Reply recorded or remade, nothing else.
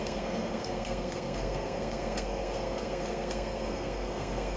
remade